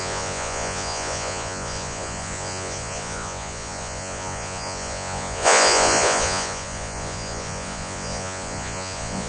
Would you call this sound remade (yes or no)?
yes